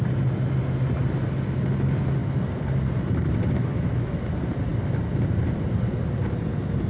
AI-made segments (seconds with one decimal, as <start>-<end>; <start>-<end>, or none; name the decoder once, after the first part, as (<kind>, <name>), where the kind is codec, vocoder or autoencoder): none